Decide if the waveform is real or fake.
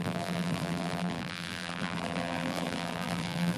fake